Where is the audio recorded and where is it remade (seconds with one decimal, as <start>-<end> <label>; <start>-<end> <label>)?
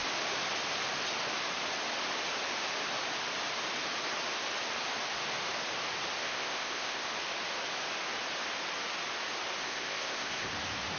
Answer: 0.0-6.2 recorded; 6.2-7.1 remade; 7.1-9.6 recorded; 9.6-10.5 remade; 10.5-11.0 recorded